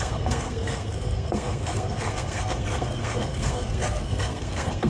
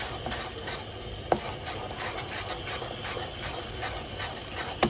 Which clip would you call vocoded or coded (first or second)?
first